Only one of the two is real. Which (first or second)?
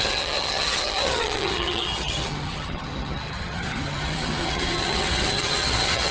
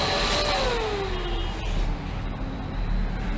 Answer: second